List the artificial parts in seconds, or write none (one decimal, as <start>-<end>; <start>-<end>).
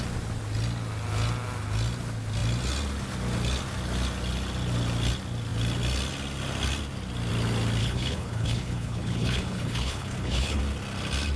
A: 7.8-10.6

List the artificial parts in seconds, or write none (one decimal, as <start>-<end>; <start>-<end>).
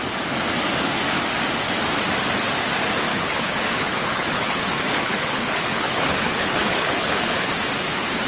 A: 3.1-7.5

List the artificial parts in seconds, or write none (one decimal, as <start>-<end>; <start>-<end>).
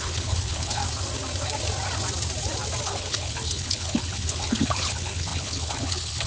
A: 0.0-0.8; 2.8-6.3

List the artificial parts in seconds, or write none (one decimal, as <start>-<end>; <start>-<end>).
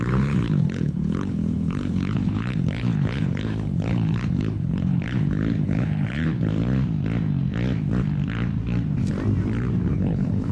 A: 0.0-6.5; 9.9-10.5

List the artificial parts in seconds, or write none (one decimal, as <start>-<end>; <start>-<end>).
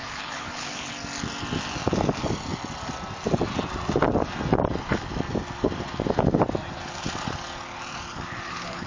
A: 0.0-0.9; 8.1-8.9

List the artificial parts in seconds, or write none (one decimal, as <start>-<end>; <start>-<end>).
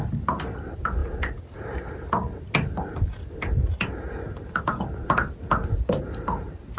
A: none